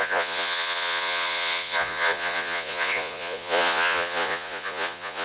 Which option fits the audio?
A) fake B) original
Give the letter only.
A